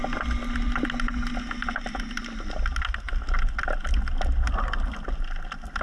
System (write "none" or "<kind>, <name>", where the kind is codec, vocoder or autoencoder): none